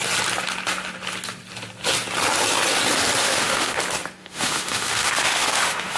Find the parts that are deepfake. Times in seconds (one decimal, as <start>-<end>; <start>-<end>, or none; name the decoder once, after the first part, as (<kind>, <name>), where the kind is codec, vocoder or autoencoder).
3.2-3.8 (autoencoder, DAC-VAE); 4.2-6.0